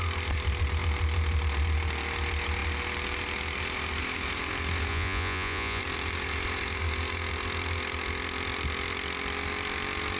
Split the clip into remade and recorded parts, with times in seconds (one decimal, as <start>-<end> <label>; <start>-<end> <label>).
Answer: 0.0-4.9 recorded; 4.9-5.8 remade; 5.8-10.2 recorded